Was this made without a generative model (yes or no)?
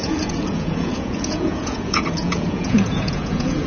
no